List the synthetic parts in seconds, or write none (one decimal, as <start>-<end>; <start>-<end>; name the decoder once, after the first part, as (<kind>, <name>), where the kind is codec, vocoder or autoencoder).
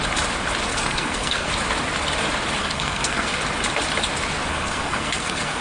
0.7-1.5 (codec, SNAC); 2.6-3.3; 4.5-5.6